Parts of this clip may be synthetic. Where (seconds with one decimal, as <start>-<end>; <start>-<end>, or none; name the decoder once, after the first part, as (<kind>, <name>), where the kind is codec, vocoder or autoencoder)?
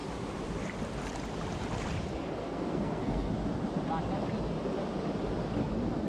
2.4-3.3 (codec, SNAC)